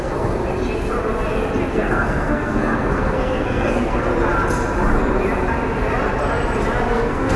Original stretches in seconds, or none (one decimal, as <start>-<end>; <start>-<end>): 0.4-1.7; 4.1-6.9